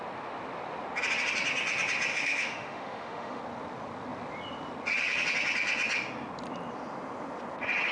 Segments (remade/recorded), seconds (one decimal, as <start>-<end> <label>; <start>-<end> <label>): 0.0-2.1 recorded; 2.1-3.4 remade; 3.4-7.9 recorded